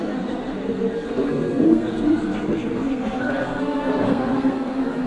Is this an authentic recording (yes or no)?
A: no